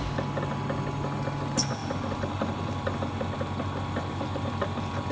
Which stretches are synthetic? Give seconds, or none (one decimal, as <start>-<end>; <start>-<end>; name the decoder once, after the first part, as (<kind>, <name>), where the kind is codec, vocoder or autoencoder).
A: none